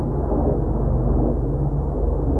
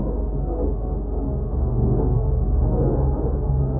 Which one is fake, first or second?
second